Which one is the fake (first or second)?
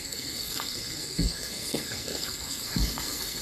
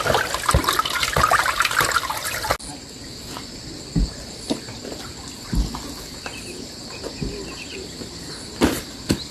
first